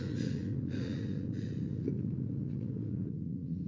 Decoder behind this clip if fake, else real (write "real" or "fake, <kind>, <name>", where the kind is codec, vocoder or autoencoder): fake, vocoder, Vocos